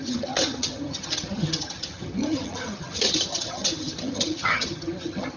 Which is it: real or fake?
fake